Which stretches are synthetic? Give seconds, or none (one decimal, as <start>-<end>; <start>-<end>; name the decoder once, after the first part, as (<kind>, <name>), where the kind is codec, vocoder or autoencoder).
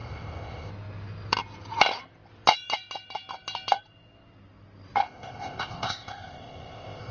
0.0-0.7 (codec, ZipCodec); 5.0-7.1